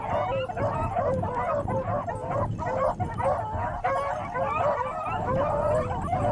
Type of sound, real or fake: real